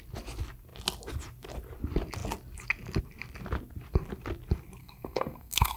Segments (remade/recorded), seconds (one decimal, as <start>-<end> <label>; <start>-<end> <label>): 0.0-4.8 recorded; 4.8-5.8 remade